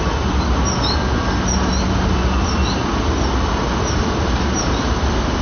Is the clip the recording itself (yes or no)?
yes